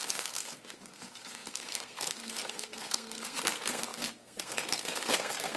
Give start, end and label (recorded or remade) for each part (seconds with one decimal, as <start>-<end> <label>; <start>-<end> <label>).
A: 0.0-5.6 remade